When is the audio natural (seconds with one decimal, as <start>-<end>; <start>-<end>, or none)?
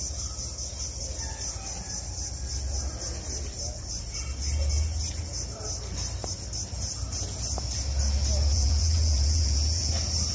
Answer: 0.0-8.5; 9.9-10.3